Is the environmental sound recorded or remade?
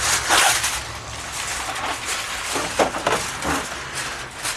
recorded